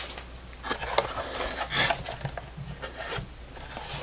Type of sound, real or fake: real